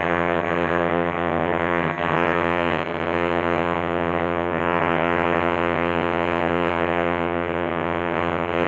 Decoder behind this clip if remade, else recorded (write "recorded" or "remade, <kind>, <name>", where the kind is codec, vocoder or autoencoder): remade, vocoder, HiFi-GAN